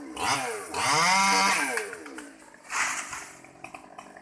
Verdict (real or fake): real